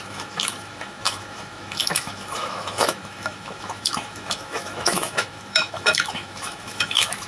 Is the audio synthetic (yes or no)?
yes